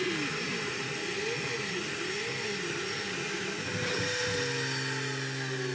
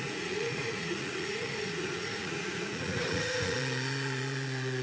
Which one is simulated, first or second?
second